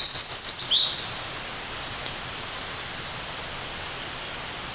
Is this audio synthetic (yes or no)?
no